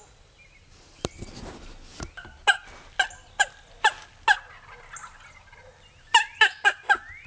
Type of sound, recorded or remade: recorded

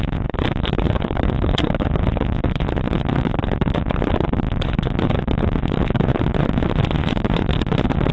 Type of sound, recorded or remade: remade